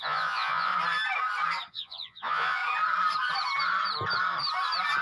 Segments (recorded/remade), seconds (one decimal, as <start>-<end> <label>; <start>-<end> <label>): 0.0-0.7 remade; 0.7-1.7 recorded; 1.7-2.6 remade; 2.6-5.0 recorded